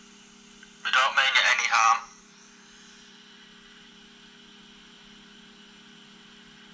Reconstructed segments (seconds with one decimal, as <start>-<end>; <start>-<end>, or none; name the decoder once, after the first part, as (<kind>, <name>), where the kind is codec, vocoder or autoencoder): 1.0-3.9 (vocoder, BigVGAN v2)